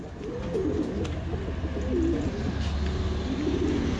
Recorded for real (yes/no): yes